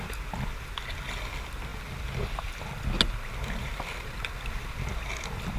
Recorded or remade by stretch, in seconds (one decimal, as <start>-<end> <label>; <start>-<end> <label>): 0.0-5.6 recorded